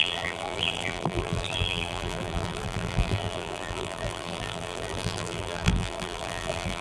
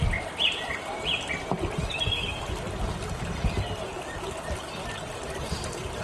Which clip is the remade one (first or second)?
first